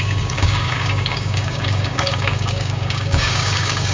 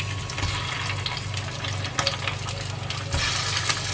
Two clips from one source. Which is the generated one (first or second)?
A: first